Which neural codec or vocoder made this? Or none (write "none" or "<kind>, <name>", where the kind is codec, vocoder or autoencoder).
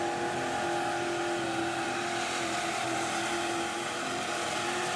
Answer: none